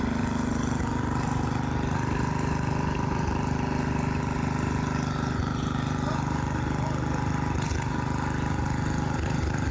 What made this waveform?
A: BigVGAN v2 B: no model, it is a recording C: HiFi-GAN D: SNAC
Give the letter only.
B